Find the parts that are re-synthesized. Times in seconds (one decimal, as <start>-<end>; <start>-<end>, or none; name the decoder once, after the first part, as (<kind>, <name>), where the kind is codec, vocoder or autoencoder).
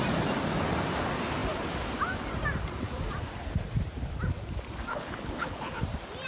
4.9-5.8 (codec, HILCodec)